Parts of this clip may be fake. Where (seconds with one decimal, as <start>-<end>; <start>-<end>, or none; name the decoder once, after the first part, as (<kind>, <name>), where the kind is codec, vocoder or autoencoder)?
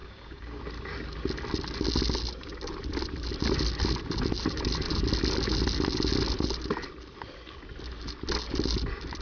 0.0-0.6 (codec, DAC)